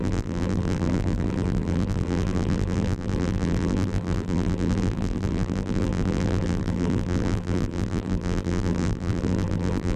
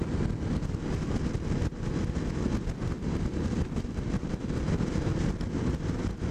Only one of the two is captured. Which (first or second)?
second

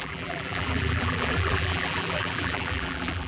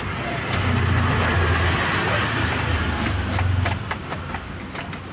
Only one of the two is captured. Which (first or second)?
second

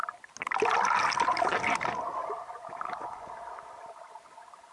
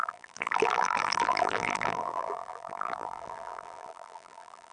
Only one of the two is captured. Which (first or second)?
first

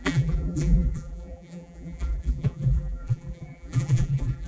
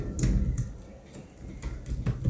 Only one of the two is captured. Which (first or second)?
second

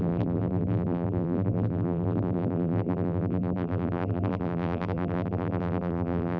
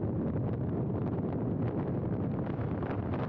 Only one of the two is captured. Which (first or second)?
second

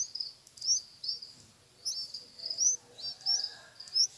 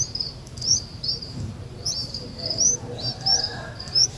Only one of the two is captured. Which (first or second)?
first